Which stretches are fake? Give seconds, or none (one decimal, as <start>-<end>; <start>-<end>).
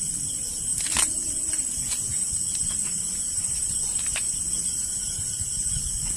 0.7-1.5; 2.1-5.8